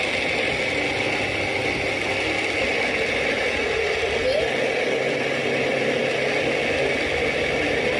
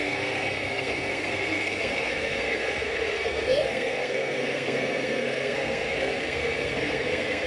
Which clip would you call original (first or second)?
first